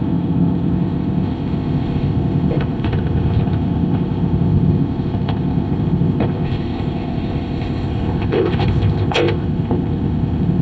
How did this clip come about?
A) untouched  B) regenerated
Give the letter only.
B